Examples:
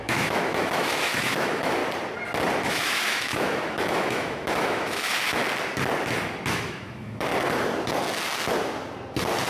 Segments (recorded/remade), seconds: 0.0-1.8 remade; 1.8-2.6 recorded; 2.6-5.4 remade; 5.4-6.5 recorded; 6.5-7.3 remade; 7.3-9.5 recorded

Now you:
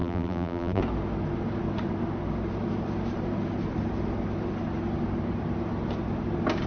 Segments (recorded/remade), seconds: 0.0-0.8 remade; 0.8-6.7 recorded